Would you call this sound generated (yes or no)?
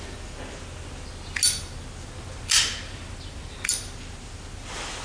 no